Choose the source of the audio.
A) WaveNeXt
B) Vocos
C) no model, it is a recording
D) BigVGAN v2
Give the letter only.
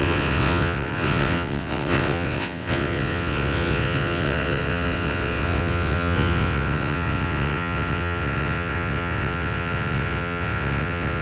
A